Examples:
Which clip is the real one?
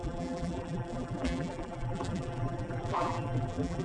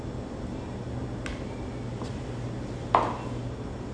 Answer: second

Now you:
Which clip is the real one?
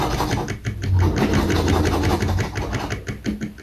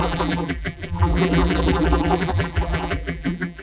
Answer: first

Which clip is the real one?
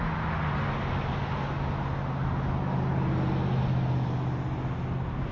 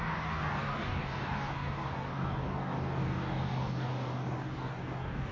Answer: first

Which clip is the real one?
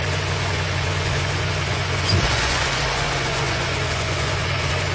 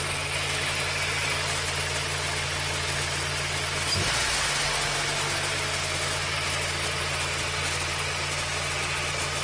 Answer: second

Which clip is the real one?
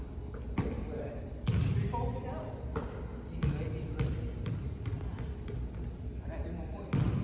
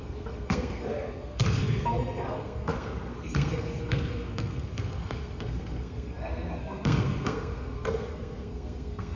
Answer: first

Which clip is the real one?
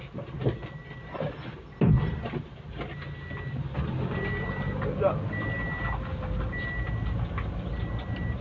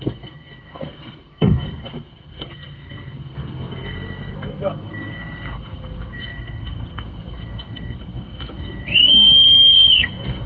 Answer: first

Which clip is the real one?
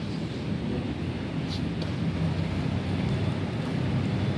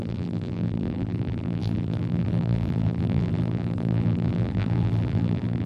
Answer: first